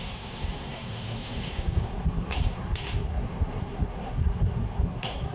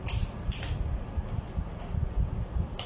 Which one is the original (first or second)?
second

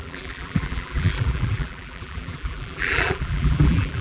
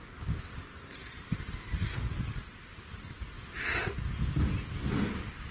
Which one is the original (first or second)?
second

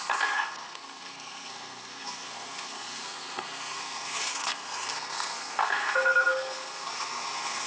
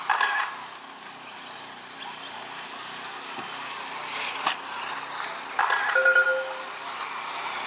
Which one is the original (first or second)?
second